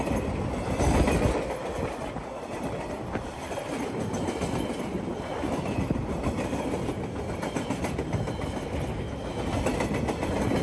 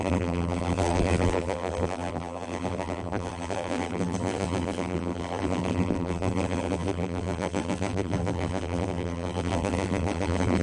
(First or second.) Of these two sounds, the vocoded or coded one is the second